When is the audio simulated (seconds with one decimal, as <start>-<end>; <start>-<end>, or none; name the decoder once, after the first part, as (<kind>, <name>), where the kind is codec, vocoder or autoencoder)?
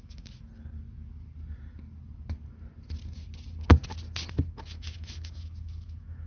0.0-0.5 (autoencoder, DAC-VAE); 4.3-6.3